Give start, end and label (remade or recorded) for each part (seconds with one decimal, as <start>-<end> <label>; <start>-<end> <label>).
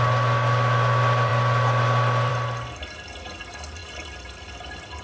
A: 0.0-5.0 recorded